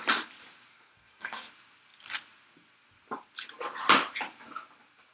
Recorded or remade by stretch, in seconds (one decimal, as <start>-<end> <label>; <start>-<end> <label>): 0.0-0.7 recorded; 0.7-1.5 remade; 1.5-5.1 recorded